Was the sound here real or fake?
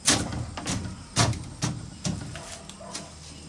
real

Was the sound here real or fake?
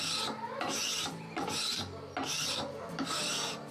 real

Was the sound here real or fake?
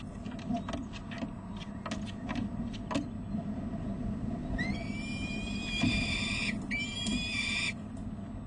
real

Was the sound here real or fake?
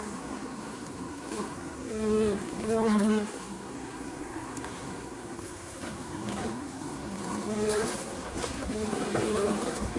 fake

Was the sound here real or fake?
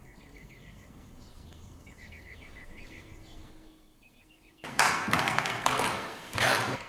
fake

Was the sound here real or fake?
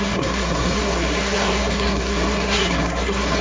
fake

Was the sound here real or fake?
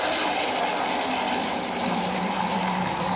real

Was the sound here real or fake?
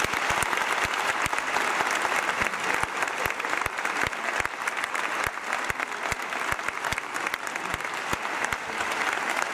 real